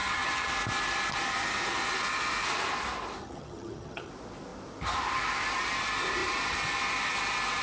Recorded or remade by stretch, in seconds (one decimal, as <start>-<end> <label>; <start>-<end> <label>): 0.0-0.5 remade; 0.5-3.2 recorded; 3.2-4.1 remade; 4.1-7.6 recorded